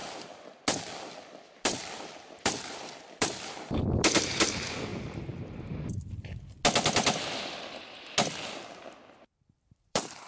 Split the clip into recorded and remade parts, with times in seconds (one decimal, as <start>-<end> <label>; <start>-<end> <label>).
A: 0.0-1.6 recorded; 1.6-4.9 remade; 4.9-9.5 recorded; 9.5-10.3 remade